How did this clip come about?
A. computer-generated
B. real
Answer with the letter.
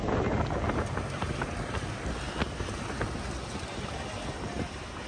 B